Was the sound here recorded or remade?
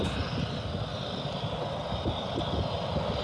recorded